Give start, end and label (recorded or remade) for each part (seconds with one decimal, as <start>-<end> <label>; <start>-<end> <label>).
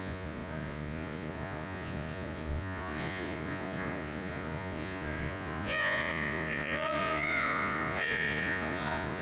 0.0-9.2 remade